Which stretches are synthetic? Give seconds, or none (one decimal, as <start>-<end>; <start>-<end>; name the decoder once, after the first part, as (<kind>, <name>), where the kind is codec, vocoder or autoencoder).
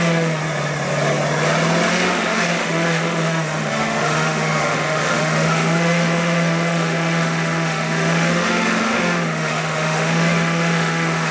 0.0-0.4 (autoencoder, DAC-VAE); 1.9-11.3